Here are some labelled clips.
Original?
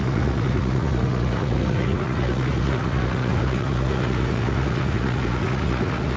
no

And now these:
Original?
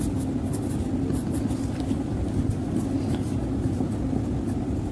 yes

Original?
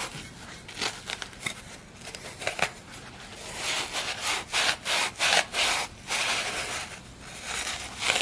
yes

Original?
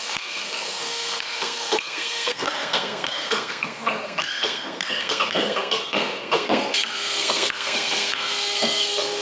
no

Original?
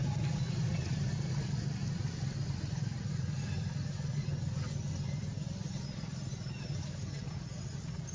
yes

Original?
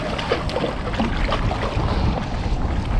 yes